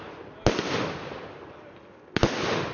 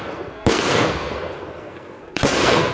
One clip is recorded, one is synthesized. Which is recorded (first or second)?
first